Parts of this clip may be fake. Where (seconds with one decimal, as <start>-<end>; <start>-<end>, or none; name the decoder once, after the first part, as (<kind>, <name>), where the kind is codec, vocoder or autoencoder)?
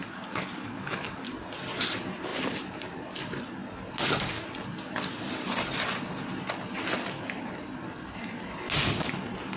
0.0-1.3 (codec, DAC)